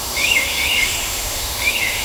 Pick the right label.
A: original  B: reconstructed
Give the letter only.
B